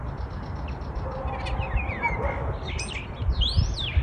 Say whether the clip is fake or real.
real